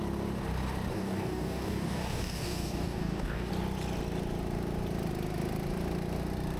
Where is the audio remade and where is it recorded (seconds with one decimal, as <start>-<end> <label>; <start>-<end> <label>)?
0.0-0.9 recorded; 0.9-3.5 remade; 3.5-6.6 recorded